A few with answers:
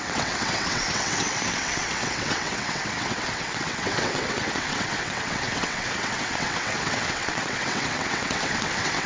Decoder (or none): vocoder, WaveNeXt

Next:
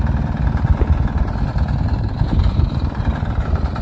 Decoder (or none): none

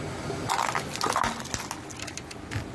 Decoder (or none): none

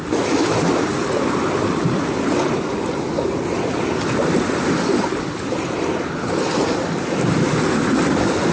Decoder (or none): none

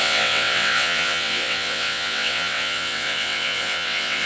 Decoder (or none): vocoder, WaveNeXt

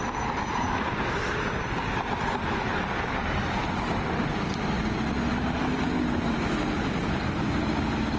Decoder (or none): none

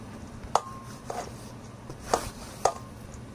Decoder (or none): none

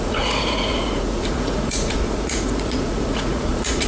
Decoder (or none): vocoder, Vocos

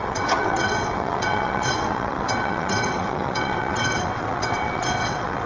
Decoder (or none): vocoder, WaveNeXt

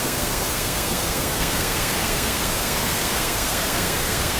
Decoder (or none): codec, SNAC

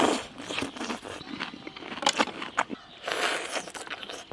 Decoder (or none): none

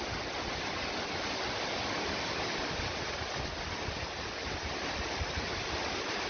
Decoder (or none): none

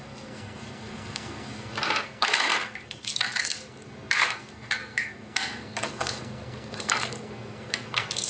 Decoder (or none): codec, SNAC